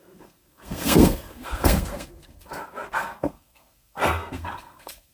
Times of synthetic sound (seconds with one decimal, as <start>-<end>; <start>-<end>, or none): 0.0-5.1